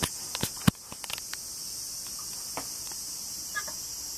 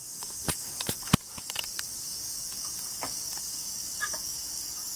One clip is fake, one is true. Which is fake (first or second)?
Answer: second